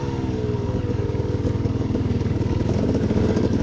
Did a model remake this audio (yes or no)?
yes